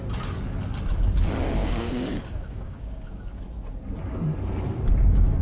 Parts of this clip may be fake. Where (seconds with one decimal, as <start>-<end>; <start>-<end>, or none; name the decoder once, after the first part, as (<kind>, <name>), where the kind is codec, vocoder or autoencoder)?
1.6-3.4 (codec, DAC)